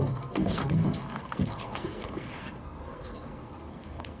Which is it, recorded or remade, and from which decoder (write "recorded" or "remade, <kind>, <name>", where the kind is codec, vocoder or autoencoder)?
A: remade, codec, SNAC